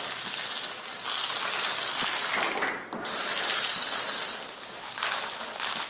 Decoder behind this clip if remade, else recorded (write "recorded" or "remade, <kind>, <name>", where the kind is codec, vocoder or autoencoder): recorded